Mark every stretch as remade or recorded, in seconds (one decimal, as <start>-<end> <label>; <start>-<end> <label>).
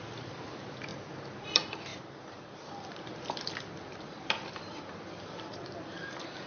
0.0-0.9 remade; 0.9-1.5 recorded; 1.5-6.5 remade